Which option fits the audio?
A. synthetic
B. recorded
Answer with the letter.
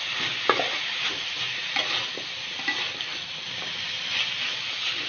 B